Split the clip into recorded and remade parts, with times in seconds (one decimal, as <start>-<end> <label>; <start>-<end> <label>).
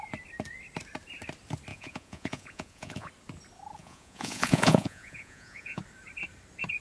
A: 0.0-1.7 recorded; 1.7-3.1 remade; 3.1-3.8 recorded; 3.8-5.8 remade; 5.8-6.8 recorded